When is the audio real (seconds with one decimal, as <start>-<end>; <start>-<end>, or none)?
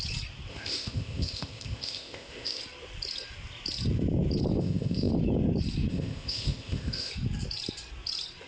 0.0-0.5; 2.6-4.6; 5.1-5.9; 7.1-8.5